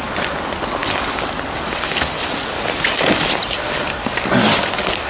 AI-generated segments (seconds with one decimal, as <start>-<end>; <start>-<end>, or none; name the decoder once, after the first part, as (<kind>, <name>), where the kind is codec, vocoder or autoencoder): none